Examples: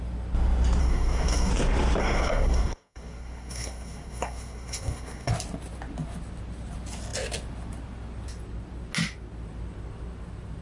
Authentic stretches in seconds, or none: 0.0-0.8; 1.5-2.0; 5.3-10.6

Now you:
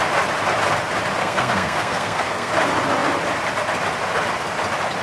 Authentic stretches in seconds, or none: 0.0-1.2; 2.5-5.0

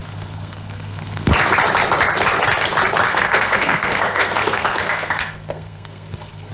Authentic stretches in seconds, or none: 1.3-3.1

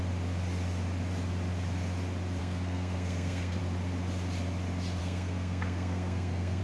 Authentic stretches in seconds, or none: 0.0-2.4; 3.6-5.0

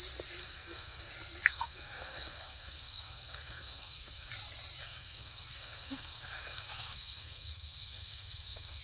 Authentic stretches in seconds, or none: 0.0-0.4; 1.1-1.5; 4.3-4.8

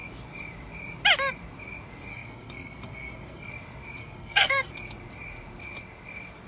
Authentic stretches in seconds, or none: 0.0-2.1; 3.5-4.0; 4.7-6.5